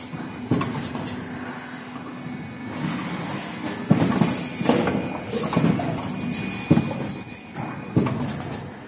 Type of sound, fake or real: real